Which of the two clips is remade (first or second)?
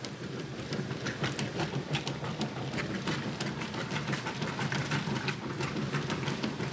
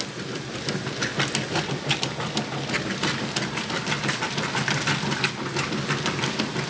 first